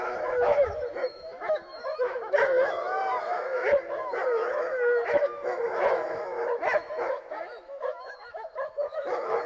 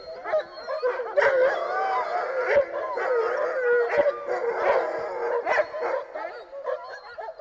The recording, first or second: second